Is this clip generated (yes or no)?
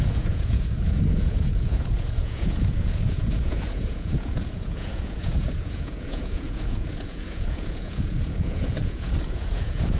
yes